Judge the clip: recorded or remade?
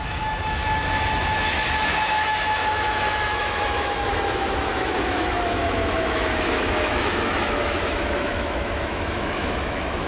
remade